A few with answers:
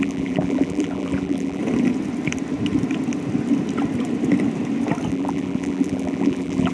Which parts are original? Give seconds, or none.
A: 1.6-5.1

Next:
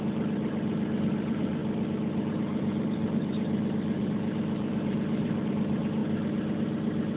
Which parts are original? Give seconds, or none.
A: 6.0-7.2